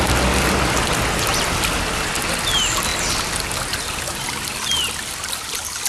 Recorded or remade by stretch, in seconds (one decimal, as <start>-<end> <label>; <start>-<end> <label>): 0.0-5.9 recorded